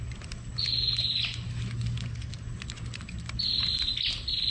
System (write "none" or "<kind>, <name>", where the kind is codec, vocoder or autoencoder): none